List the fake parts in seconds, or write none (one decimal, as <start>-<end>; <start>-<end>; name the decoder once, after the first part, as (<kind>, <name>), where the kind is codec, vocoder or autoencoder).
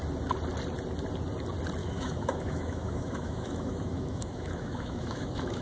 1.8-5.6 (autoencoder, DAC-VAE)